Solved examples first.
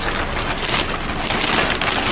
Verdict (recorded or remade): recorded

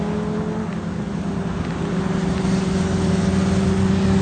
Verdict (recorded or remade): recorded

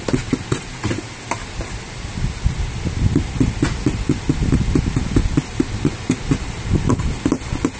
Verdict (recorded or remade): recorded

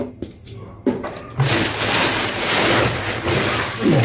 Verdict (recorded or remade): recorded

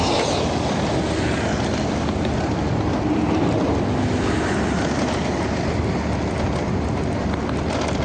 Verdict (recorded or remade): recorded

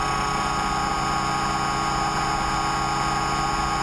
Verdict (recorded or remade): recorded